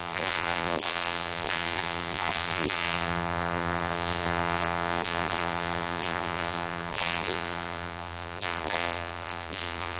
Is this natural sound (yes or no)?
no